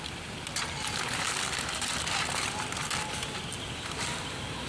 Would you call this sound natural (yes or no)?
yes